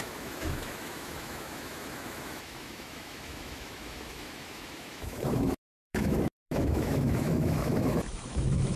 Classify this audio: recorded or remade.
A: remade